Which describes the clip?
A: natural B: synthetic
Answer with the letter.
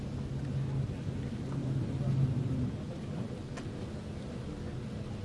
A